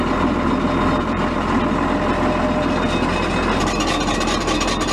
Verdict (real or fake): real